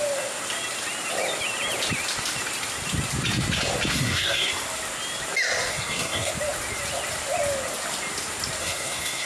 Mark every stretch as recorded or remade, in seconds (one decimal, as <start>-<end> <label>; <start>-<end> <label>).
0.0-3.9 recorded; 3.9-4.5 remade; 4.5-5.7 recorded; 5.7-6.3 remade; 6.3-8.6 recorded; 8.6-9.3 remade